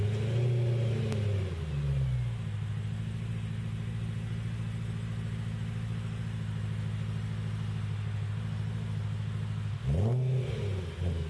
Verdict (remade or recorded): recorded